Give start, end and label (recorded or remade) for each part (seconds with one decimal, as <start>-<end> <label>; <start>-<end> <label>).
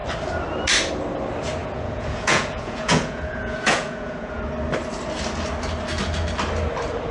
0.0-1.6 recorded; 1.6-4.4 remade; 4.4-7.1 recorded